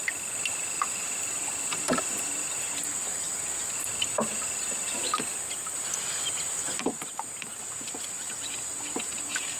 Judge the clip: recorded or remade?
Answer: recorded